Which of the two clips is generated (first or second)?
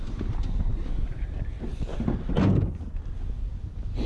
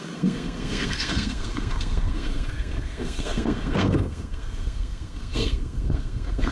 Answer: second